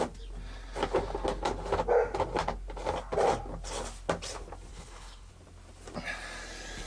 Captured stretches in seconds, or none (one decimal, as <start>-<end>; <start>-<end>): 0.0-4.7; 5.3-6.9